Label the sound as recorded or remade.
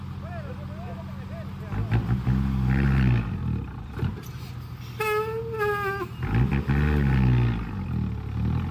recorded